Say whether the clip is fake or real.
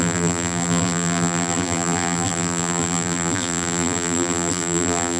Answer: fake